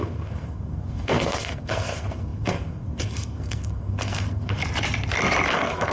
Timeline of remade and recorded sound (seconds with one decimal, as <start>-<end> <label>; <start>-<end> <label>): 0.0-4.6 remade; 4.6-5.5 recorded; 5.5-5.9 remade

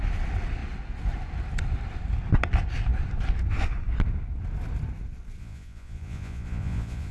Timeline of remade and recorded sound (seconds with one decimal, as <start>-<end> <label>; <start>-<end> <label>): 0.0-5.4 recorded; 5.4-7.1 remade

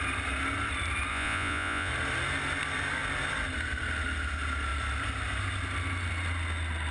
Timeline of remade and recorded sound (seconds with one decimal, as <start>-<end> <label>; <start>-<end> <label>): 0.0-1.1 recorded; 1.1-1.9 remade; 1.9-6.9 recorded

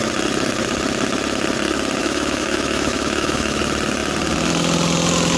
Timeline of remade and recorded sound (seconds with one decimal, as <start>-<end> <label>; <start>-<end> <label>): 0.0-2.0 recorded; 2.0-3.6 remade; 3.6-5.4 recorded

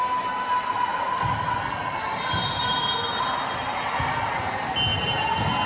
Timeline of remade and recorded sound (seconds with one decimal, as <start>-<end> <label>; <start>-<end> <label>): 0.0-5.7 recorded

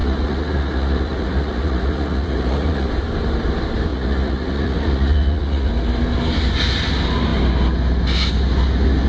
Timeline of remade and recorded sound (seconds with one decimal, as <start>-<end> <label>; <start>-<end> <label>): 0.0-2.9 remade; 2.9-3.9 recorded; 3.9-5.7 remade; 5.7-9.1 recorded